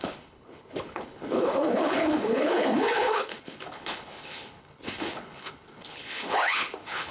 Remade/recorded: remade